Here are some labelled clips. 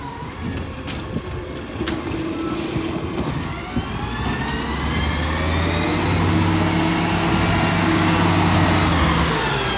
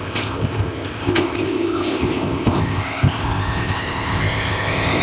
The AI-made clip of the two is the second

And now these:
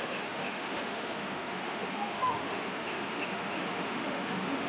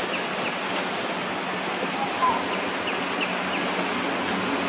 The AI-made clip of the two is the first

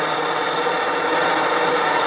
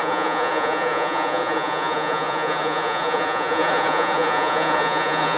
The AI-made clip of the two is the second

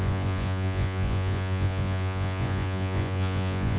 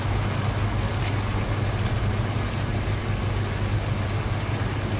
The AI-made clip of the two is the first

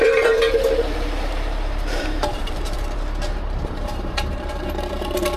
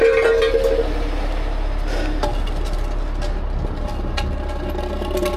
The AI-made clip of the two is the first